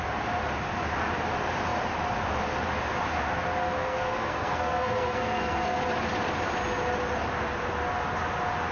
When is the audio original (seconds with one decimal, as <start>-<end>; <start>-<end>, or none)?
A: 0.0-3.6; 5.8-8.7